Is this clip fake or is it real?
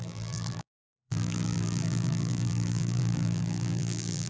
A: fake